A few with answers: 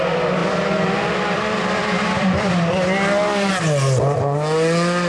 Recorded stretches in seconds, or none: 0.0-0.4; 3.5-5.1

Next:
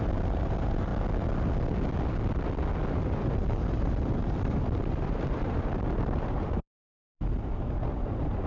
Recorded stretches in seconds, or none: 0.9-2.9

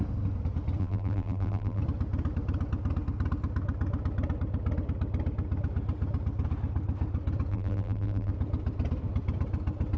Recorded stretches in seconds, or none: 0.0-0.8; 1.8-7.5; 8.3-10.0

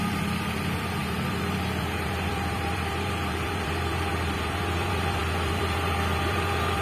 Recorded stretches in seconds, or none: none

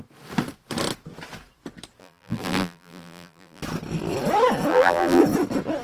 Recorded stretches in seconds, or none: 0.0-2.0; 3.6-4.7; 5.2-5.8

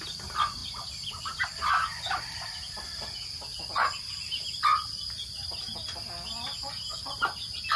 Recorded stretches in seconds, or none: 0.0-7.8

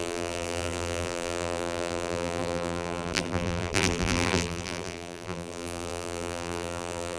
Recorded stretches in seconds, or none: none